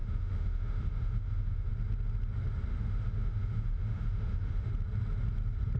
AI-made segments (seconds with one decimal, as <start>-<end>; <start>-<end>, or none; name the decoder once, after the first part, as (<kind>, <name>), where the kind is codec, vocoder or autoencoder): 0.0-1.7 (autoencoder, DAC-VAE); 2.7-4.7